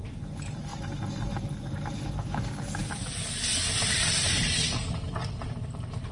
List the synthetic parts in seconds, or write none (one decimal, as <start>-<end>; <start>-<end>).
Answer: 0.0-0.7; 2.4-6.1